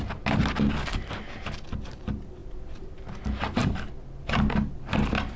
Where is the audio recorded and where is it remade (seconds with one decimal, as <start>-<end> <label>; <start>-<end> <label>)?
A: 0.0-5.4 recorded